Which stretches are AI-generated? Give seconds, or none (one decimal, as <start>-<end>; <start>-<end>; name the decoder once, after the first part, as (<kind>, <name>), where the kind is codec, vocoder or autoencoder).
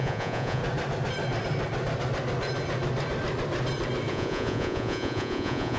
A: 0.0-0.6 (vocoder, Vocos); 4.1-5.8